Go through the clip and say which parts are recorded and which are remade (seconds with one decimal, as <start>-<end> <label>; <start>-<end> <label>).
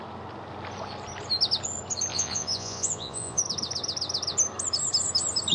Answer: 0.0-2.1 recorded; 2.1-3.4 remade; 3.4-5.5 recorded